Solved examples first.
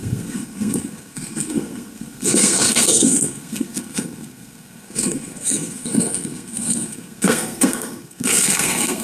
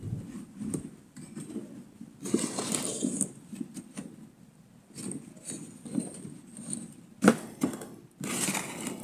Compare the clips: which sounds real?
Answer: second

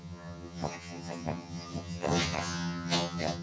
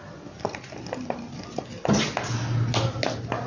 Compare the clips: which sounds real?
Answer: second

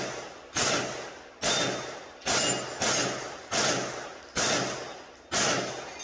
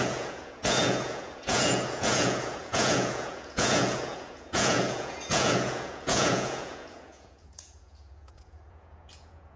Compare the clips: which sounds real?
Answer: first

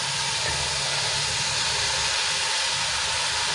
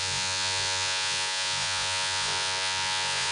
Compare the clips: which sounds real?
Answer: first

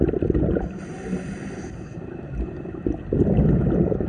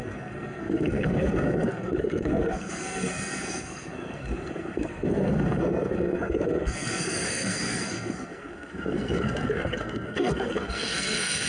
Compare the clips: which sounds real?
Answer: first